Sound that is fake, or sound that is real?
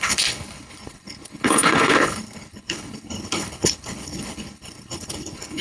fake